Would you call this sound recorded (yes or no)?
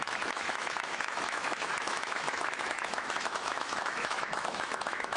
no